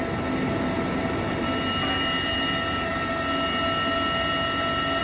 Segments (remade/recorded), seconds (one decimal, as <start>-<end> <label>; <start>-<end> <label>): 0.0-5.0 recorded